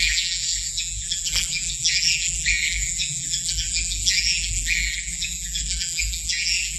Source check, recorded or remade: remade